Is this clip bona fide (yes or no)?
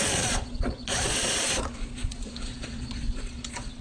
no